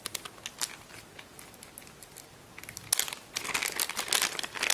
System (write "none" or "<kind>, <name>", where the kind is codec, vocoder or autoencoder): none